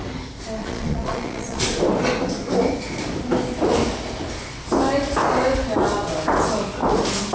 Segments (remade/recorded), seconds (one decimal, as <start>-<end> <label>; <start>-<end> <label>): 0.0-0.6 recorded; 0.6-1.6 remade; 1.6-7.3 recorded